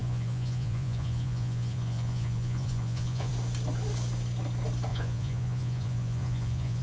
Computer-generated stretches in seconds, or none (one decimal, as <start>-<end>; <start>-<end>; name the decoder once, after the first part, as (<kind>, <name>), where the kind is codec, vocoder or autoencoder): 0.0-3.3 (vocoder, Vocos); 4.9-6.8